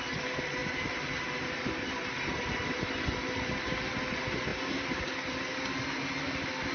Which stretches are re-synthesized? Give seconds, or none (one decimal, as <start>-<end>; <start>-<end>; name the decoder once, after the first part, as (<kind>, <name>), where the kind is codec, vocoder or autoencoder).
none